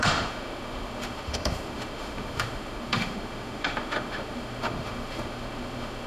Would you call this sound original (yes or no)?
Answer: no